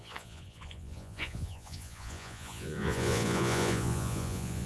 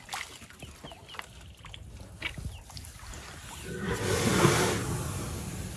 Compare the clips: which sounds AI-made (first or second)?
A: first